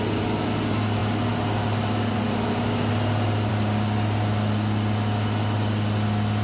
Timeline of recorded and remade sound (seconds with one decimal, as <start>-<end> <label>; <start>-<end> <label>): 0.0-6.4 recorded